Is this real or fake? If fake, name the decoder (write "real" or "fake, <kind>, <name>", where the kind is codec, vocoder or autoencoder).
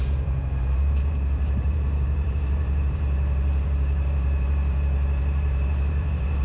fake, vocoder, BigVGAN v2